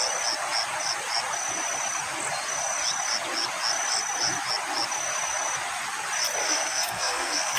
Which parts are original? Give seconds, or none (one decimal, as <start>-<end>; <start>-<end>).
0.0-6.4